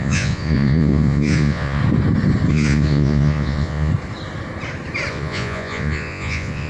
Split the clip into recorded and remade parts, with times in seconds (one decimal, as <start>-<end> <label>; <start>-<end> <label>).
0.0-1.8 remade; 1.8-2.5 recorded; 2.5-3.9 remade; 3.9-5.1 recorded; 5.1-6.7 remade